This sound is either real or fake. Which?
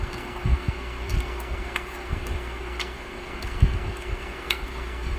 fake